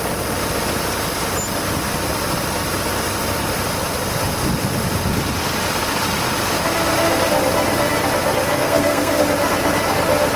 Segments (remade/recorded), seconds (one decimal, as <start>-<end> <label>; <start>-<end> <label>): 0.0-8.5 recorded; 8.5-9.2 remade; 9.2-10.4 recorded